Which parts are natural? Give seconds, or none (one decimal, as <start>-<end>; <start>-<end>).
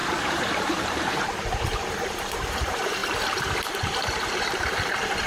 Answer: none